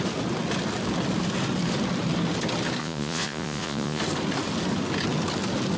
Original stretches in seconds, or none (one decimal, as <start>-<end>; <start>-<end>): 0.0-2.8; 4.0-5.8